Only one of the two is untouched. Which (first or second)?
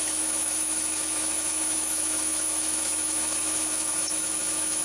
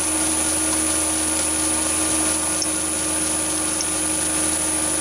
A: second